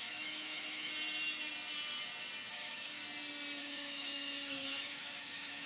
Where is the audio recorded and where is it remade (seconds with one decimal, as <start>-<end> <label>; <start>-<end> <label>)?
0.0-0.9 remade; 0.9-2.5 recorded; 2.5-3.0 remade; 3.0-3.6 recorded; 3.6-5.7 remade